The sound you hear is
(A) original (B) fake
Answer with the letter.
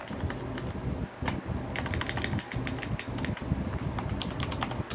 A